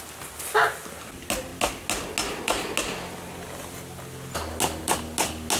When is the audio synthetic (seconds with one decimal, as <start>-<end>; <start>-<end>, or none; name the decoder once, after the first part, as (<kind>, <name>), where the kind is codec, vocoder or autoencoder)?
none